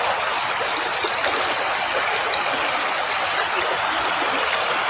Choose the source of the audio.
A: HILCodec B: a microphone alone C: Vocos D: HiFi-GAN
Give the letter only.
B